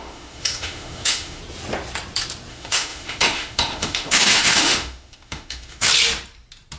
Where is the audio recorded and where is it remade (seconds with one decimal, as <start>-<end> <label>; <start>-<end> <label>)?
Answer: 0.0-1.4 remade; 1.4-2.5 recorded; 2.5-5.9 remade; 5.9-6.8 recorded